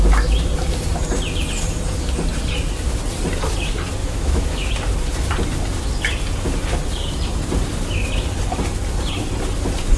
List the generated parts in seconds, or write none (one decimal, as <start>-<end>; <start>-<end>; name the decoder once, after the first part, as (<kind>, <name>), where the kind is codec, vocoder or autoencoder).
4.0-4.7 (autoencoder, DAC-VAE)